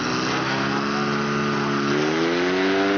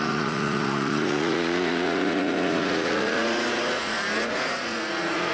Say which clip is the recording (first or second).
first